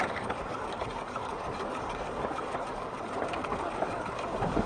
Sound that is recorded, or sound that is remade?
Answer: remade